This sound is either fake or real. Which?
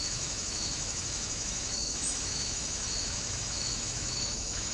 fake